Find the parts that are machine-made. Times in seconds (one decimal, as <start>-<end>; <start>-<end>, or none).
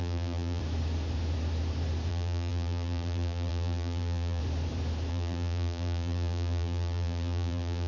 0.0-0.6; 2.1-4.4; 5.1-7.9